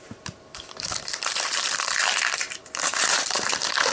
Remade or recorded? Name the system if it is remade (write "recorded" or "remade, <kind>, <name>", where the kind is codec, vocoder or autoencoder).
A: remade, vocoder, BigVGAN v2